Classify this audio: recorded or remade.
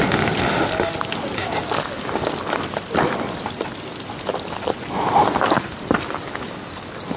recorded